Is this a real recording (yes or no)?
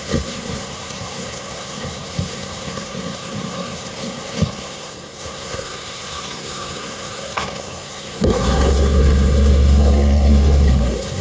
no